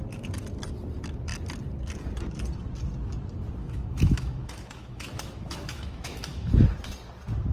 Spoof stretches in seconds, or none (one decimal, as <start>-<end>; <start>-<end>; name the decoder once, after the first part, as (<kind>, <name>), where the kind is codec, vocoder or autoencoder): 3.6-6.5 (autoencoder, DAC-VAE)